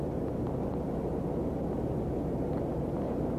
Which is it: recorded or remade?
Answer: recorded